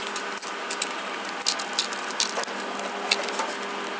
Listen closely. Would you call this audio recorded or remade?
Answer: recorded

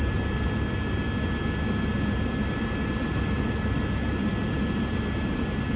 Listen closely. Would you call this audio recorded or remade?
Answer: recorded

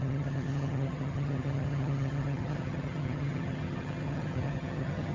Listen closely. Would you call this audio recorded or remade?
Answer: remade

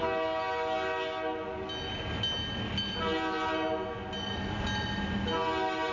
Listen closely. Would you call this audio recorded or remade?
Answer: recorded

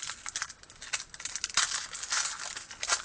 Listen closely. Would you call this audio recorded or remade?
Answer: recorded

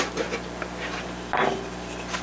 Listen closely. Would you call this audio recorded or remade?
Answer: recorded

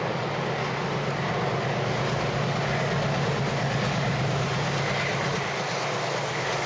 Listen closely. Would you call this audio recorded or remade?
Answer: recorded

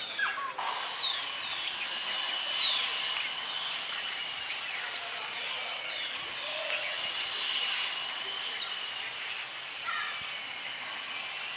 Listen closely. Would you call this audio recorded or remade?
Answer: recorded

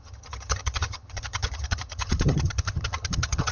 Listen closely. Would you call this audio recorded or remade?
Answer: remade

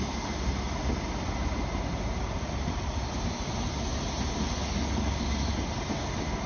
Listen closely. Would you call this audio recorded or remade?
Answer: recorded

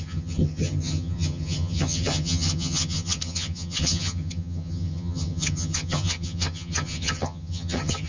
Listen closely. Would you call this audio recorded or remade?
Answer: remade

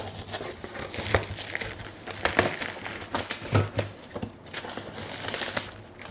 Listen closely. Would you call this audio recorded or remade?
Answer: recorded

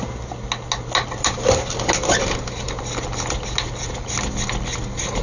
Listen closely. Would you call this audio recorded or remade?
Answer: recorded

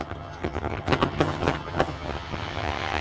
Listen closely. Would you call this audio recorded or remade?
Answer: remade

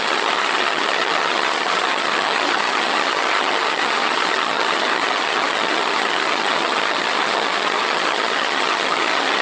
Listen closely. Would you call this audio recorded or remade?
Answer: remade